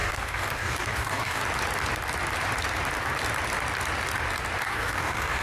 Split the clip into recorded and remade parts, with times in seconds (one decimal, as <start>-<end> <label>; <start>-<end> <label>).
0.0-1.4 remade; 1.4-4.6 recorded; 4.6-5.4 remade